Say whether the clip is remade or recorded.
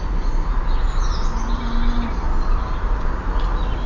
recorded